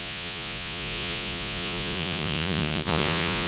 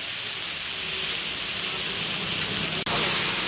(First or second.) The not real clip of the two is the first